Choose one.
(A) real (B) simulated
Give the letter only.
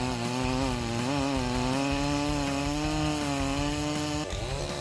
A